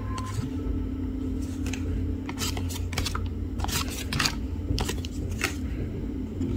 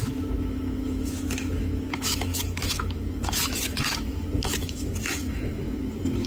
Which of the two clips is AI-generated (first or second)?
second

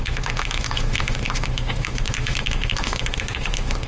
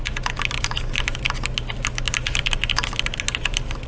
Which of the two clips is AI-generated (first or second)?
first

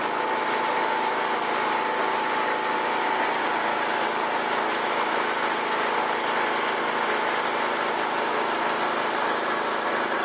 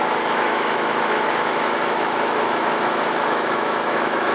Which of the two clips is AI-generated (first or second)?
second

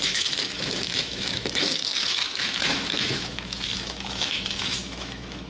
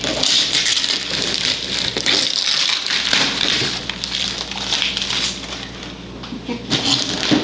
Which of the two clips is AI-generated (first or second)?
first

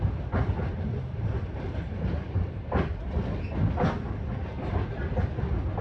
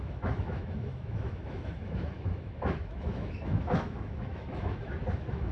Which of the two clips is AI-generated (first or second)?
second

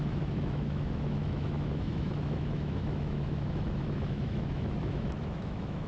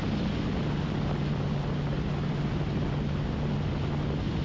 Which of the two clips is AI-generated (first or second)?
first